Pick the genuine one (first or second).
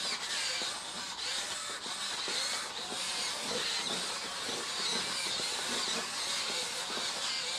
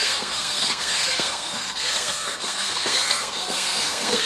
first